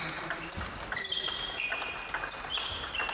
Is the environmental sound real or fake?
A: real